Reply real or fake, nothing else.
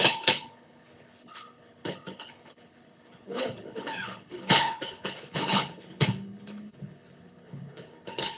fake